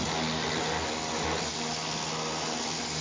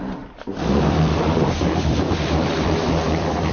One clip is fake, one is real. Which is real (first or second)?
first